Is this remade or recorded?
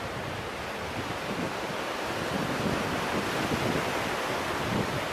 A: recorded